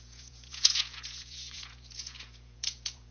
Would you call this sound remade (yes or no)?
yes